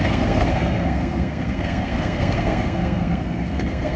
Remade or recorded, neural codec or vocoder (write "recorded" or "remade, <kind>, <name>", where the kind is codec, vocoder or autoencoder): remade, codec, SNAC